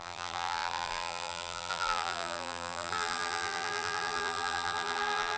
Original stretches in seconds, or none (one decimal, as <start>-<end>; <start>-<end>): none

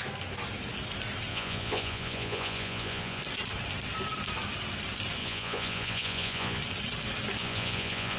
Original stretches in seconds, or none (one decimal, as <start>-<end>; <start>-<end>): 0.0-1.3; 3.2-5.2; 6.6-7.4

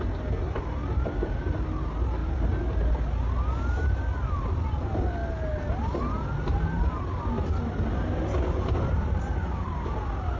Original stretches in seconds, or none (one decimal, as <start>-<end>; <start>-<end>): 0.0-10.4

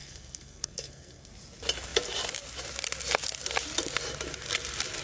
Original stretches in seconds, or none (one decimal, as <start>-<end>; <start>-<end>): 1.3-5.0

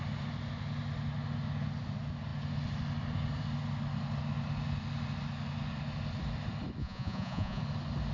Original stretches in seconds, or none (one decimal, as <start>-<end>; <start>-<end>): 0.0-6.8; 7.6-8.1